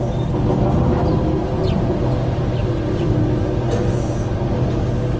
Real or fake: real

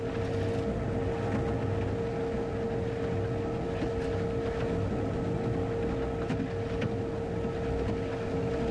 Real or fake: real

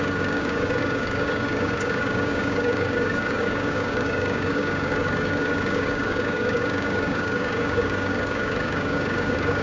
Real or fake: fake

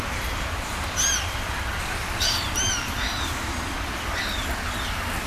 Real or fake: real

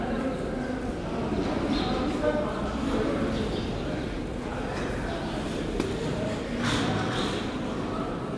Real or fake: real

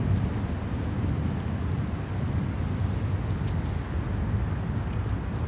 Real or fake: real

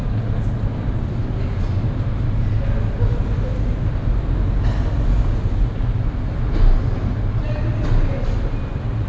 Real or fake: real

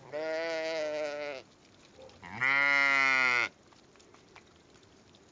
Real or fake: real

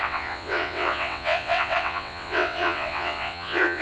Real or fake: fake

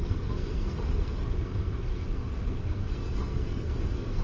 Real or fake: fake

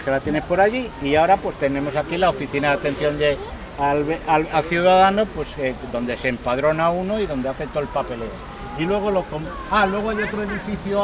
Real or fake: real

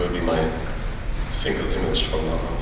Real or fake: real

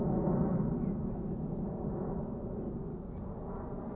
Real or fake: real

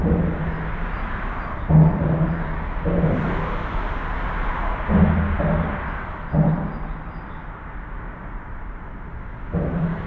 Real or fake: real